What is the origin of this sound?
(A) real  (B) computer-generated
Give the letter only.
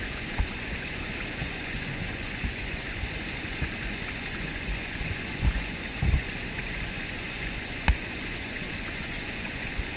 B